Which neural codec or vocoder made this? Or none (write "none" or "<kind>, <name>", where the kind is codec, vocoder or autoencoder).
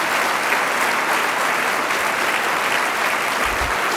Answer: none